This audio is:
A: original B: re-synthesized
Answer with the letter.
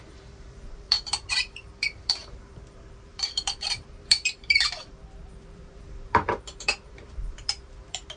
B